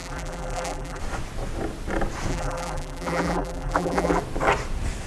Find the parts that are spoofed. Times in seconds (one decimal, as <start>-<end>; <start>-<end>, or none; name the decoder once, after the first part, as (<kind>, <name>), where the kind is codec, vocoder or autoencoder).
0.0-1.0 (vocoder, BigVGAN v2); 2.3-4.2